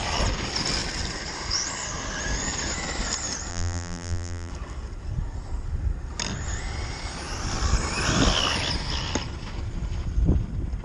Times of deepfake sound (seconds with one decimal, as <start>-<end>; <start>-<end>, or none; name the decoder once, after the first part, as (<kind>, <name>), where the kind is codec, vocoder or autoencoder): 3.5-4.5 (vocoder, BigVGAN v2)